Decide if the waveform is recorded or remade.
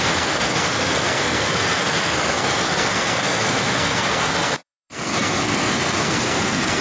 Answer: remade